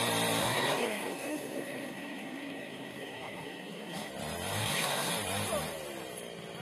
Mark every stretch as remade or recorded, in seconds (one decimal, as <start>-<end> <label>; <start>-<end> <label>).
0.0-0.4 recorded; 0.4-4.1 remade; 4.1-4.6 recorded; 4.6-5.1 remade; 5.1-6.6 recorded